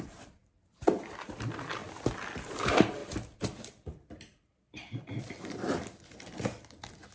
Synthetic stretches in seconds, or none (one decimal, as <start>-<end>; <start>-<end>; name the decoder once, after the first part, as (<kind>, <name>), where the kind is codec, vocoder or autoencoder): 0.0-1.8 (vocoder, BigVGAN v2); 2.5-3.0; 3.6-7.1